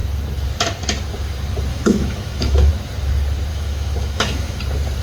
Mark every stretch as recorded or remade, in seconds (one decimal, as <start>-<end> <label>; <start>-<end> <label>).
0.0-1.7 recorded; 1.7-2.7 remade; 2.7-3.5 recorded; 3.5-4.6 remade; 4.6-5.0 recorded